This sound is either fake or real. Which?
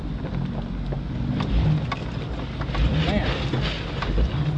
real